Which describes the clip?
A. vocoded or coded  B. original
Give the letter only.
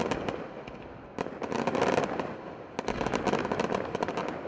B